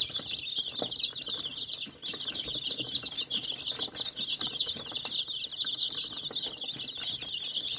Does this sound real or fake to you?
real